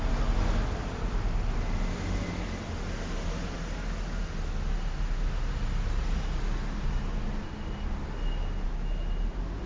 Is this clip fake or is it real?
real